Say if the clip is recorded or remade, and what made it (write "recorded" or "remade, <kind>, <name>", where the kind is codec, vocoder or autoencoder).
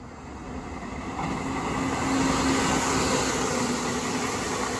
recorded